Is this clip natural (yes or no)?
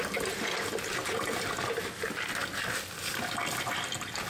yes